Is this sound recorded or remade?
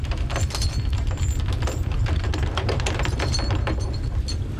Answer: recorded